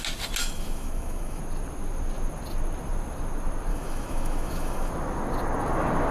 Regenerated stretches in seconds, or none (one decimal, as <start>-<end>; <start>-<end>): 0.4-1.4; 3.7-4.9